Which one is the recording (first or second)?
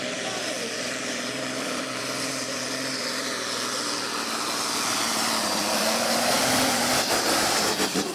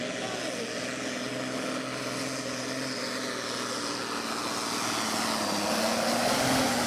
second